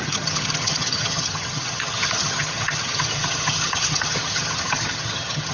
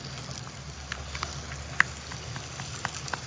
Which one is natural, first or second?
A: second